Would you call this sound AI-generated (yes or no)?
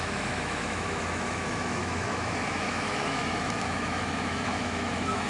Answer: yes